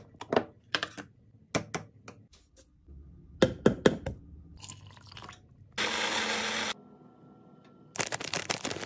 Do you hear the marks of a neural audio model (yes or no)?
no